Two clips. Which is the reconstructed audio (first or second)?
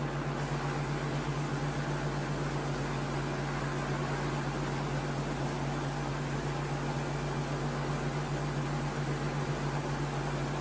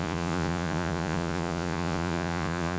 second